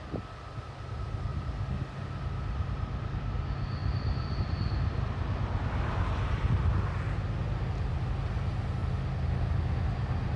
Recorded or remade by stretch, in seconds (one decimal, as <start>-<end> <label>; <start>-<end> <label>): 0.0-3.8 recorded; 3.8-6.5 remade; 6.5-10.4 recorded